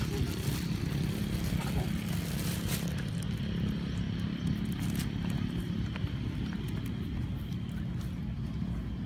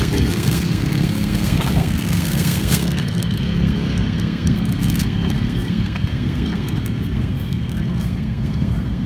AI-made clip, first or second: second